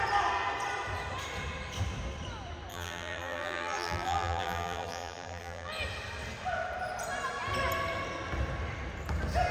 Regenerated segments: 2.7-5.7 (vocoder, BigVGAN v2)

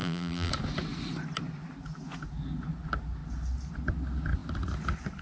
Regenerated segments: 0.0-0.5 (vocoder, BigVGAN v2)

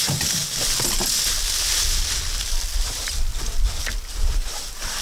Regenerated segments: 0.0-0.4 (vocoder, BigVGAN v2); 2.8-3.3; 4.1-5.0

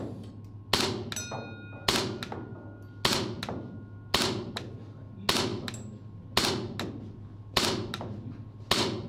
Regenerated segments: none

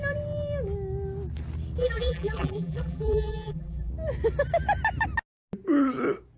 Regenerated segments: 1.8-3.9 (vocoder, BigVGAN v2)

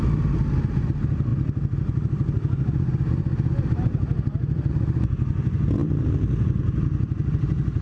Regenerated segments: 1.3-4.7 (vocoder, BigVGAN v2)

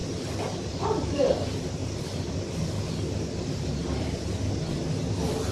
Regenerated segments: 0.0-1.8 (vocoder, BigVGAN v2); 5.1-5.5